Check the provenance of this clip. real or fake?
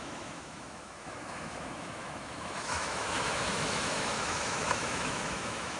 fake